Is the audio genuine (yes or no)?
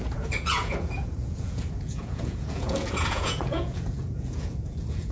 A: no